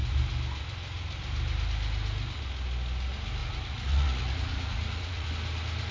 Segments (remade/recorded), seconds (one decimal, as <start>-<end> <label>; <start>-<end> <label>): 0.0-3.4 recorded; 3.4-5.3 remade; 5.3-5.9 recorded